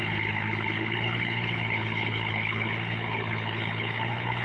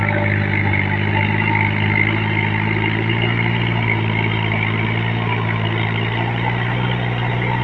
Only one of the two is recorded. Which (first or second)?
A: second